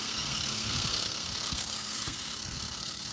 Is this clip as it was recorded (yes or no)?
no